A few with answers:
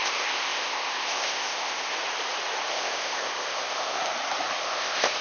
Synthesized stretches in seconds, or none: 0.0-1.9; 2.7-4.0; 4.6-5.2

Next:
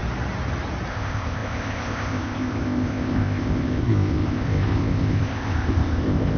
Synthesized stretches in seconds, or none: 0.9-6.4

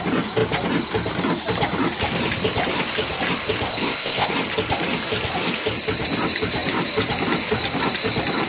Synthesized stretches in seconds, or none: 3.7-4.3

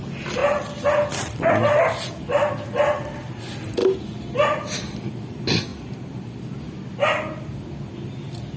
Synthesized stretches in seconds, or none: none

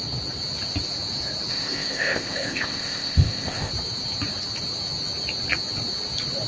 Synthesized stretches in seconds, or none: 1.5-3.7

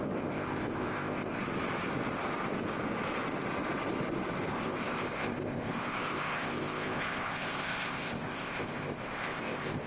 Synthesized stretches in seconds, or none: 0.0-1.4; 4.5-9.9